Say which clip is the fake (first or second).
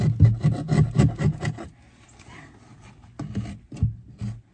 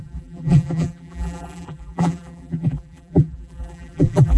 second